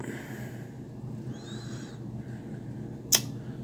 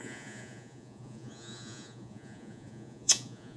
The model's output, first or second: second